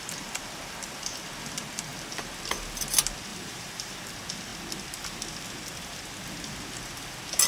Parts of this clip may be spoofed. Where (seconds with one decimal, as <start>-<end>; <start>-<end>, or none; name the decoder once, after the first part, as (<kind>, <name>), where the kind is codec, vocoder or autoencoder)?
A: 3.3-3.9 (vocoder, BigVGAN v2)